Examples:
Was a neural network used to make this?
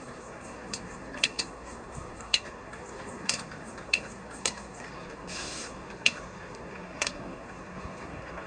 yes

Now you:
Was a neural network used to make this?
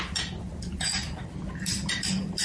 no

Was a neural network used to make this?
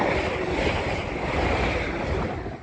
no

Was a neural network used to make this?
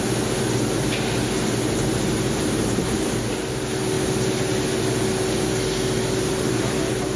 no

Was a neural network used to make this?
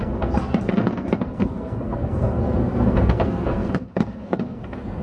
yes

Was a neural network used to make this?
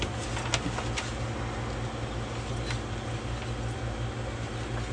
no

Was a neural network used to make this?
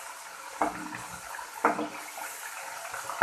no